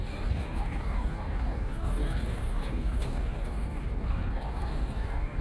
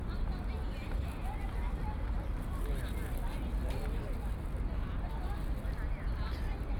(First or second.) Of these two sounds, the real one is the second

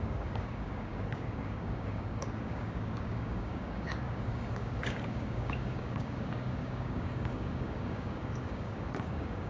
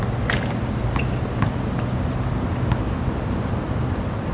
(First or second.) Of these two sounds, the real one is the second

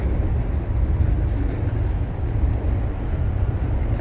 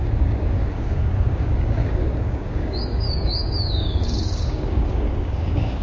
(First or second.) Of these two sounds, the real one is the first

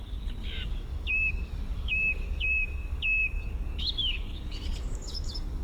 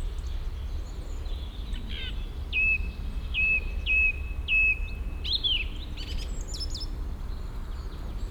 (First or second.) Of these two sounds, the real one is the second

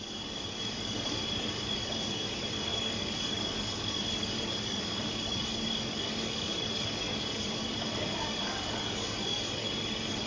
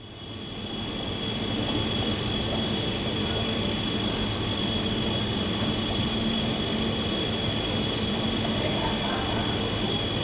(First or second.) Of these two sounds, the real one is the second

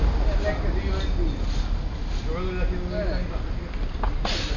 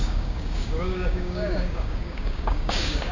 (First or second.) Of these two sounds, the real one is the first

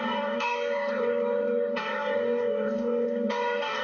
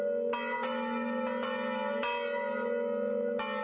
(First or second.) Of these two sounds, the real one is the second